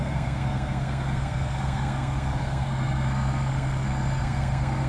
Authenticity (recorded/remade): remade